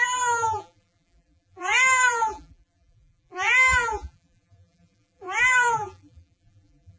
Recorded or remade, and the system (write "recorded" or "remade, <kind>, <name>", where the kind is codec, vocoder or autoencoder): remade, vocoder, BigVGAN v2